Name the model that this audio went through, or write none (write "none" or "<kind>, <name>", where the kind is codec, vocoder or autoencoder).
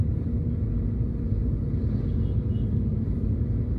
none